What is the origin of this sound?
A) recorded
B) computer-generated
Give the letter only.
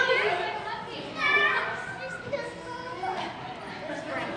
A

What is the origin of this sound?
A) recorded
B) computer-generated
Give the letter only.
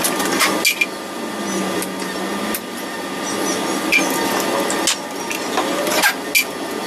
A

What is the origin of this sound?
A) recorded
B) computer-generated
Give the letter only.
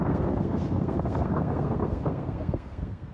B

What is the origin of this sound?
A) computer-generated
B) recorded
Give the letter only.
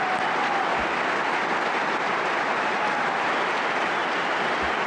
B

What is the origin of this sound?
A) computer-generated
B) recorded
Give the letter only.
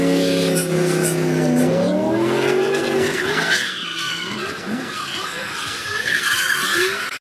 A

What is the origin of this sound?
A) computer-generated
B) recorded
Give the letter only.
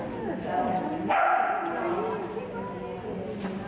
B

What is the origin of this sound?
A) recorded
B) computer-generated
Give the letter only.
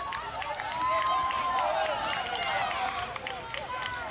A